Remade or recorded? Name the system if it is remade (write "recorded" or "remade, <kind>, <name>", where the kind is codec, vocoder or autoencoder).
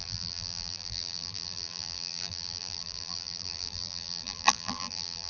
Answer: remade, vocoder, BigVGAN v2